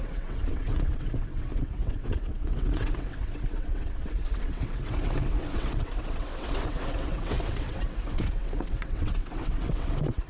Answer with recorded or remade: remade